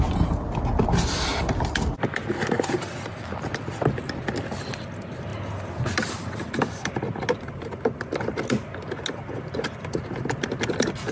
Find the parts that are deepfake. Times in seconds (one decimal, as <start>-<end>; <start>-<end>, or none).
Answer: none